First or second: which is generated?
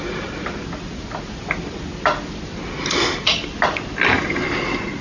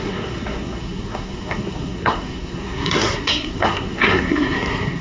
second